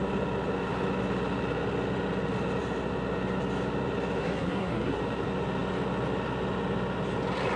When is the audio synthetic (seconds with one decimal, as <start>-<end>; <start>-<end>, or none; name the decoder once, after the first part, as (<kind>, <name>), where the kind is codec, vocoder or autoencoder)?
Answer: 4.2-5.0 (codec, SNAC)